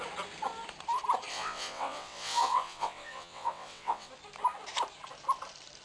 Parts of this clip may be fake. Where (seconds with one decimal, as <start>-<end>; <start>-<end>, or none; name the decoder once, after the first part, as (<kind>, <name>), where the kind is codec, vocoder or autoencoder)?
1.3-4.1 (vocoder, WaveNeXt)